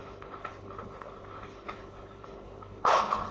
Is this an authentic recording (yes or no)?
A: no